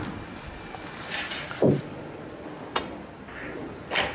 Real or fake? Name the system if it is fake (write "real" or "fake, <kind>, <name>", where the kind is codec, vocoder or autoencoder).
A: real